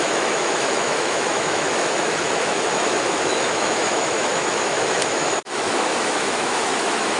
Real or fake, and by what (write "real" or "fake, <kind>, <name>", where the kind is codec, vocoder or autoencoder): fake, autoencoder, DAC-VAE